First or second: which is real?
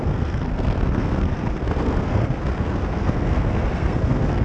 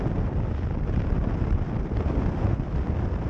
second